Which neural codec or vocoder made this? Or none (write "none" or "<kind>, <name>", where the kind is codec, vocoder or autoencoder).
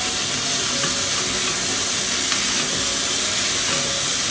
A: none